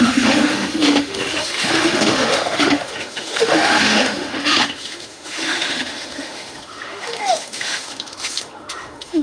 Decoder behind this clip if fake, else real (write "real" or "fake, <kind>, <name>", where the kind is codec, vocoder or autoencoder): fake, autoencoder, DAC-VAE